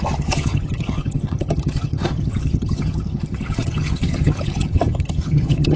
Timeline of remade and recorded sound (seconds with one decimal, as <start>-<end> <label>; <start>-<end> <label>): 0.0-5.8 remade